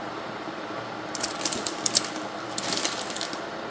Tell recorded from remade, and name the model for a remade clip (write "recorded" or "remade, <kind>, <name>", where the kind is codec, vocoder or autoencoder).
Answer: recorded